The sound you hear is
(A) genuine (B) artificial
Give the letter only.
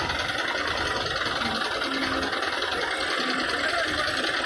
A